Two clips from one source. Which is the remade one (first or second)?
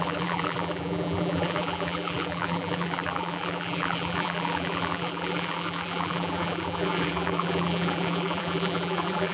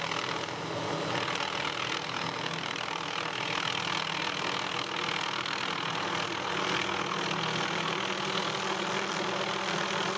first